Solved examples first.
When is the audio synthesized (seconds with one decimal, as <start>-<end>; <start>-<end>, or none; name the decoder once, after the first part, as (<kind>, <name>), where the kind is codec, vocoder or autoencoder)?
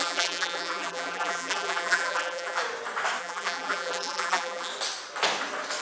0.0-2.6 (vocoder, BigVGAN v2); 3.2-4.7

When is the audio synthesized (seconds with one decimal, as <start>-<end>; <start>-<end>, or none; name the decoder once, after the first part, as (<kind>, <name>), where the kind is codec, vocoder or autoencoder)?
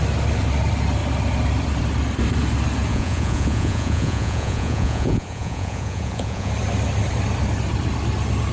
2.9-6.5 (vocoder, Vocos)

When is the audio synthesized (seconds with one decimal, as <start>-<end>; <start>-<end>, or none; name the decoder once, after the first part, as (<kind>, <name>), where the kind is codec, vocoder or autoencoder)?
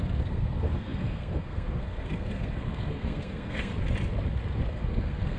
0.0-3.7 (codec, SNAC); 4.7-5.4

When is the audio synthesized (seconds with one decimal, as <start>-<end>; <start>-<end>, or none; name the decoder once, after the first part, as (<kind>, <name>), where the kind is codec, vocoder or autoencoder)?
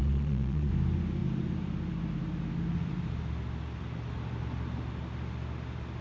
0.0-0.7 (vocoder, Vocos)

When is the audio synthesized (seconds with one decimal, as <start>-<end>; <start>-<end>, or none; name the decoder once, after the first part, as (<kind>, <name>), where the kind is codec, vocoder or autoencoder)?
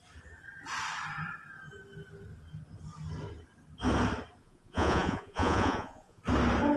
4.4-6.2 (vocoder, Vocos)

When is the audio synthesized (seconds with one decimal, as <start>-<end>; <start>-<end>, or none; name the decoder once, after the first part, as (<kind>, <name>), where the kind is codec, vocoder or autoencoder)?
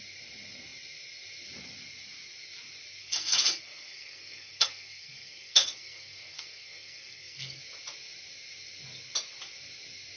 3.0-7.6 (codec, SNAC)